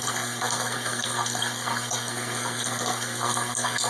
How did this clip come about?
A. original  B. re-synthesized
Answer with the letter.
B